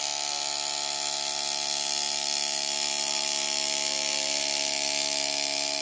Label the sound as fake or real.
real